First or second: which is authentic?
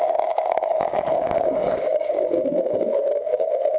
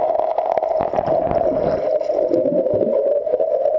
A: second